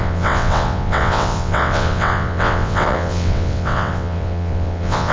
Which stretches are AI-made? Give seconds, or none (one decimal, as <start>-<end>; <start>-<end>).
0.0-5.1